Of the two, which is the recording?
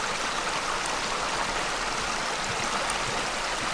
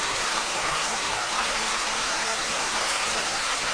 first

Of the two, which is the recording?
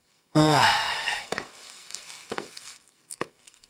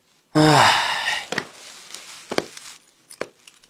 second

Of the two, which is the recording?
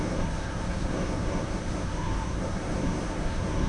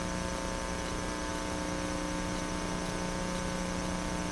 second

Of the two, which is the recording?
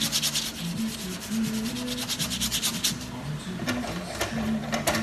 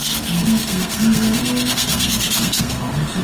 first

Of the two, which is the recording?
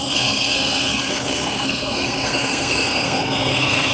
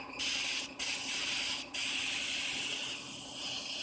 second